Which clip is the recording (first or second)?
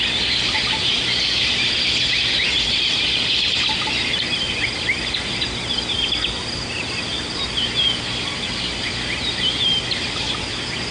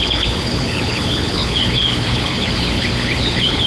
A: first